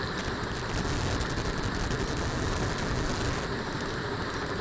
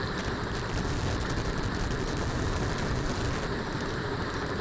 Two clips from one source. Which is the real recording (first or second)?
first